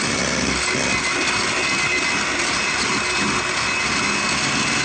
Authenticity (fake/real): real